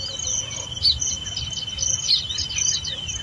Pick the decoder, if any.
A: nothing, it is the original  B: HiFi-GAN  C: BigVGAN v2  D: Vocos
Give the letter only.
A